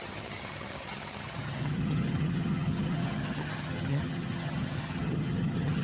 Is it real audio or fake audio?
fake